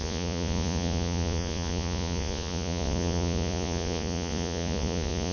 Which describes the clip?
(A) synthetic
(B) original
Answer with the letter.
A